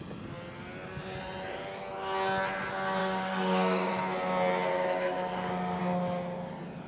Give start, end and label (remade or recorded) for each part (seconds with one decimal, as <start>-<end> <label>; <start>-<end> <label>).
0.0-3.0 recorded; 3.0-3.9 remade; 3.9-4.7 recorded; 4.7-5.8 remade; 5.8-6.9 recorded

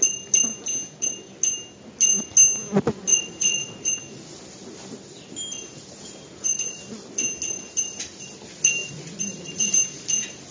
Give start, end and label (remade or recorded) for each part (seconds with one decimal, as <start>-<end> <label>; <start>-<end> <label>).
0.0-3.1 recorded; 3.1-4.0 remade; 4.0-6.3 recorded; 6.3-6.8 remade; 6.8-8.8 recorded; 8.8-9.7 remade; 9.7-10.5 recorded